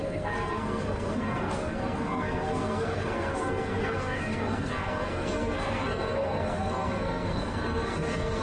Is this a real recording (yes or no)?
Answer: no